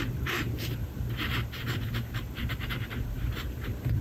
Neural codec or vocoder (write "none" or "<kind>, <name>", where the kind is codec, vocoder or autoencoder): vocoder, BigVGAN v2